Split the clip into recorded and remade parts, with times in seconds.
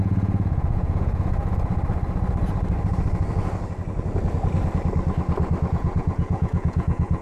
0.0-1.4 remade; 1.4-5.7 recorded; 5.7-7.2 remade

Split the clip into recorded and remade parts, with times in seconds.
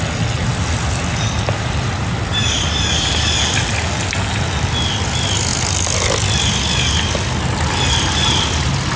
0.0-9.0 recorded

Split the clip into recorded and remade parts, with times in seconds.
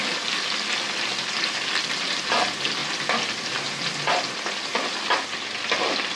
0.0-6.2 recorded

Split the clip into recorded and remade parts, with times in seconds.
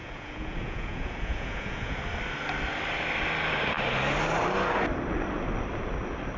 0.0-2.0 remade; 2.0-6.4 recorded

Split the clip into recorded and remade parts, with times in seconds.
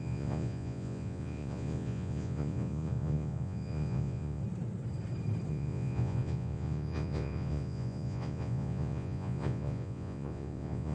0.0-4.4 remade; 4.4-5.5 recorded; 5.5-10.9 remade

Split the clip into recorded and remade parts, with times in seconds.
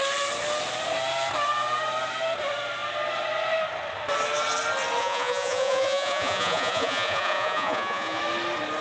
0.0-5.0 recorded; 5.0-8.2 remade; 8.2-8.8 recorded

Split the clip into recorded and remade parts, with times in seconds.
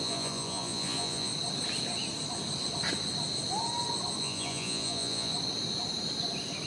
0.0-1.3 remade; 1.3-4.2 recorded; 4.2-5.3 remade; 5.3-6.7 recorded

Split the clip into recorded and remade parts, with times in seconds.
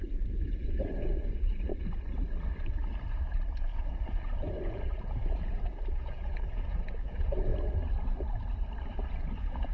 0.0-1.7 remade; 1.7-3.6 recorded; 3.6-7.5 remade; 7.5-9.1 recorded; 9.1-9.7 remade